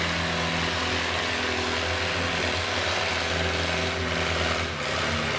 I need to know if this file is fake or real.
real